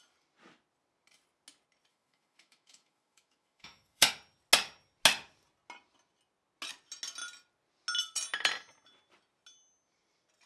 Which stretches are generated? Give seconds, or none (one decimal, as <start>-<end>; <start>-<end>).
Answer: 1.9-4.1